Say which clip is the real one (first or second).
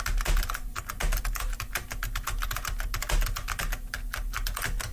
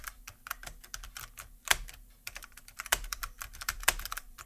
first